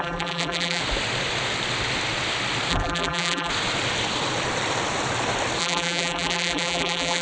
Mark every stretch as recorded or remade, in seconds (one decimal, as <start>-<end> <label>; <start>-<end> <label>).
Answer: 0.0-0.8 remade; 0.8-2.7 recorded; 2.7-3.5 remade; 3.5-5.6 recorded; 5.6-7.2 remade